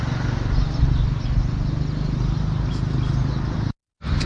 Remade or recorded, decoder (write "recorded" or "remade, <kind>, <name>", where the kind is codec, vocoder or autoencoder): recorded